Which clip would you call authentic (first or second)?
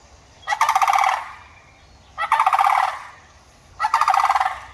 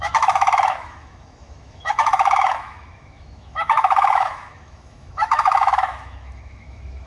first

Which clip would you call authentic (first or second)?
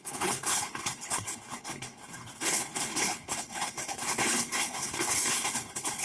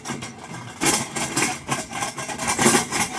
second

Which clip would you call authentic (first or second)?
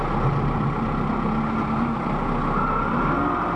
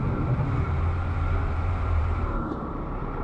first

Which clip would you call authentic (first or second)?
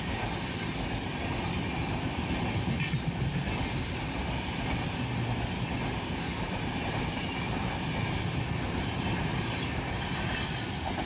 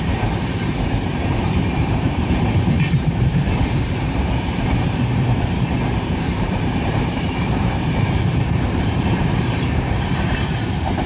first